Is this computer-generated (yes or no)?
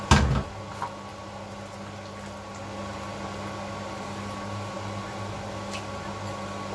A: no